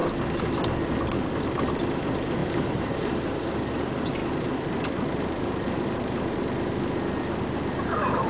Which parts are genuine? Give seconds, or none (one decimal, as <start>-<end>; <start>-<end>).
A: 0.0-2.4; 3.2-4.2; 6.4-8.3